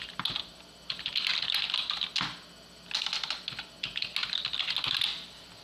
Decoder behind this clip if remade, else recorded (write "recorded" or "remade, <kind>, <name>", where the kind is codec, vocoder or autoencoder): recorded